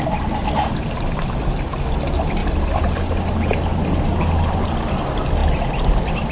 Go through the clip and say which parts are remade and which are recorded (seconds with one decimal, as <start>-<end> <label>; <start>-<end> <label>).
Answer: 0.0-6.3 recorded